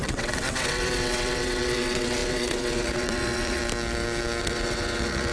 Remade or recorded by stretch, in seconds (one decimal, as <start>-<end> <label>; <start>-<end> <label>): 0.0-3.6 remade; 3.6-4.4 recorded; 4.4-5.3 remade